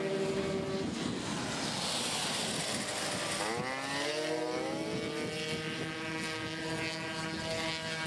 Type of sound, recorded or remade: recorded